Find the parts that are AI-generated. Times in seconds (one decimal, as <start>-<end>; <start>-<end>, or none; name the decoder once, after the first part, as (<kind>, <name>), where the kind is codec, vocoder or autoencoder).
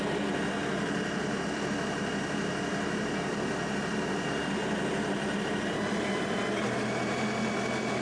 none